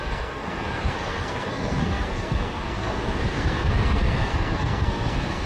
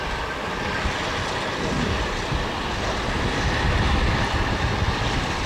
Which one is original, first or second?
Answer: second